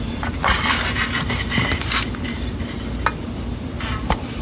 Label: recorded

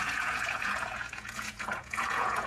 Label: remade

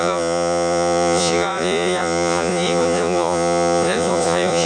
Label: remade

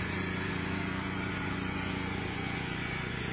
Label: remade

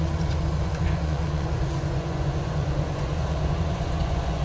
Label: remade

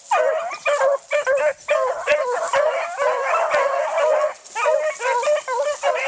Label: recorded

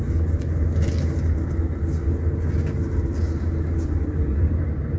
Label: recorded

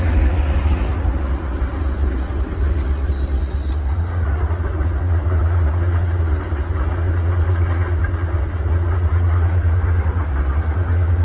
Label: remade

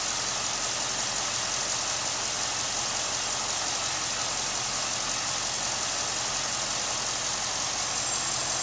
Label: recorded